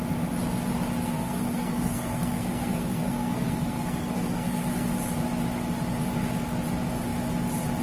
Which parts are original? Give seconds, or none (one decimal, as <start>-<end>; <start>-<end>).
0.0-1.0; 4.9-7.8